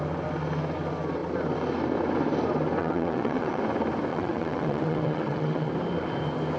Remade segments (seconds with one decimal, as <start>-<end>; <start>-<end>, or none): 2.8-3.6; 4.1-5.7